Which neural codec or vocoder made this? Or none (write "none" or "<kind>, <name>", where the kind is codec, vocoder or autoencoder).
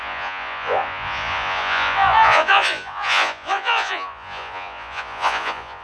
vocoder, Vocos